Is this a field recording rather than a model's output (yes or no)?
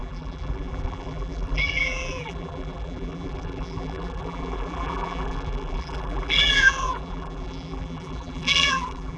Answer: no